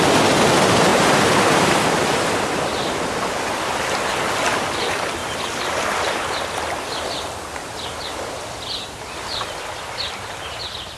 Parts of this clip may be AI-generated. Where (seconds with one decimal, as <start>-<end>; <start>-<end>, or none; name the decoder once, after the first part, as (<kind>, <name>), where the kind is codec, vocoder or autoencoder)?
0.9-4.1 (vocoder, BigVGAN v2); 5.2-10.5